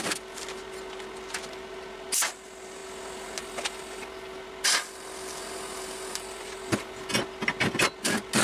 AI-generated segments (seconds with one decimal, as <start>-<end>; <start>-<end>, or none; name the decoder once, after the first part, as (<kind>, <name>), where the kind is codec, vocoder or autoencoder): none